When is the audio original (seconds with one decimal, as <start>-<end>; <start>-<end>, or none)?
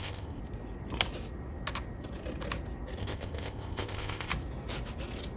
0.4-3.0; 4.3-5.4